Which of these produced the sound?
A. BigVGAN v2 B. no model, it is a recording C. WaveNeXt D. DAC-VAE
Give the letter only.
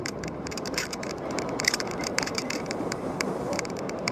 A